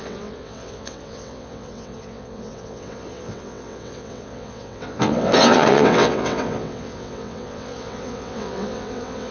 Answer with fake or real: fake